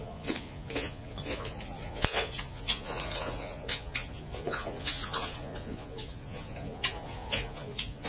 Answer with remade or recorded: remade